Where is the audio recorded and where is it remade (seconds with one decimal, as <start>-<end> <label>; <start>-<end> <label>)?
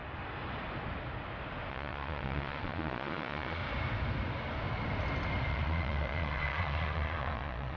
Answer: 0.0-1.7 recorded; 1.7-3.6 remade; 3.6-5.5 recorded; 5.5-7.8 remade